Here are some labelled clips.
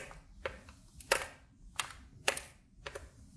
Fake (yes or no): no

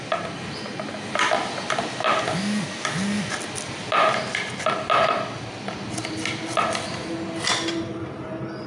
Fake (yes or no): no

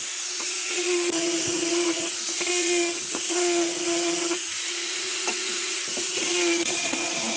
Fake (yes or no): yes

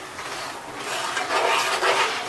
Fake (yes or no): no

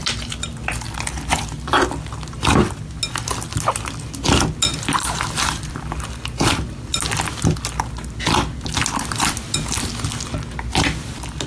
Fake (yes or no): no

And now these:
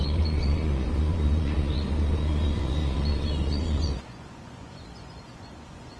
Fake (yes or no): yes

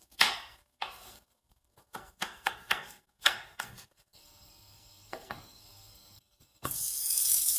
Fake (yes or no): yes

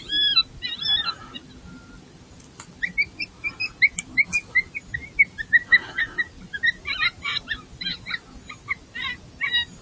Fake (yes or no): no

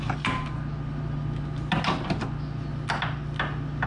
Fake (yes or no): no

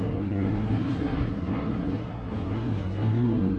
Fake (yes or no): yes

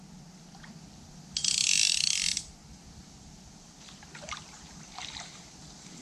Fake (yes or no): no